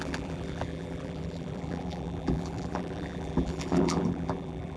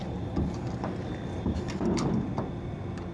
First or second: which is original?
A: second